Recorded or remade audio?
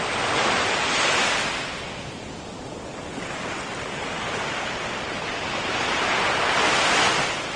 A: recorded